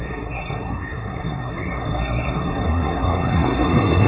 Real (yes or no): no